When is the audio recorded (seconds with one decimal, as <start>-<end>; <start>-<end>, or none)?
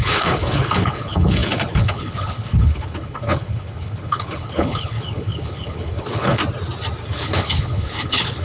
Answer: 6.4-7.1